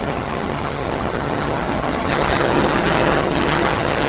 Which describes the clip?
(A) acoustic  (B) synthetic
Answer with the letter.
B